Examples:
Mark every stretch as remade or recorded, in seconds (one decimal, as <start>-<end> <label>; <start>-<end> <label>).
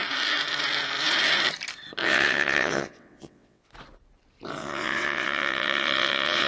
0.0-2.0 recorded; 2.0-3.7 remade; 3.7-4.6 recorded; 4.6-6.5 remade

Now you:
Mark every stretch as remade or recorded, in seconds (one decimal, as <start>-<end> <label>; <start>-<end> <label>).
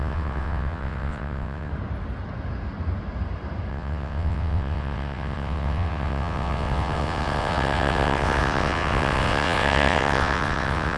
0.0-1.7 remade; 1.7-3.7 recorded; 3.7-11.0 remade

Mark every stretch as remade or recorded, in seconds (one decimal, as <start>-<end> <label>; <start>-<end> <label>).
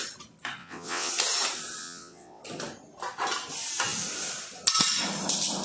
0.0-0.6 recorded; 0.6-1.1 remade; 1.1-1.8 recorded; 1.8-2.4 remade; 2.4-5.6 recorded